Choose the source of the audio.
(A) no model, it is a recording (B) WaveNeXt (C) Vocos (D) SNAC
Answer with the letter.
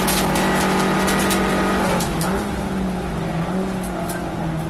A